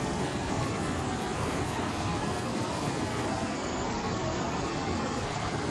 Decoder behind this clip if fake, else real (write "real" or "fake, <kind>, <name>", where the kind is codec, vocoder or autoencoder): fake, codec, SNAC